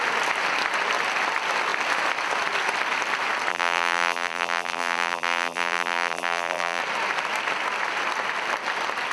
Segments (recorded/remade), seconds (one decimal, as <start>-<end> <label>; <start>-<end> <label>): 0.0-3.5 recorded; 3.5-6.8 remade; 6.8-9.1 recorded